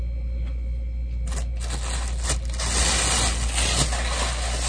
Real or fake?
real